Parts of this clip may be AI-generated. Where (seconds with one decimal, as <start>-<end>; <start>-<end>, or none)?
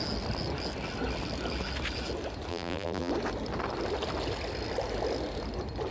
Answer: 2.5-3.1